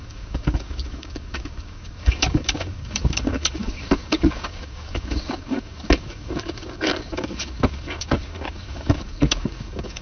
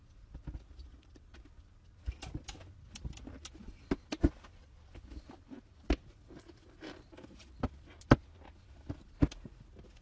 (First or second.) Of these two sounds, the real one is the second